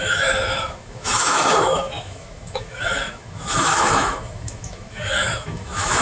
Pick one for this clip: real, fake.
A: fake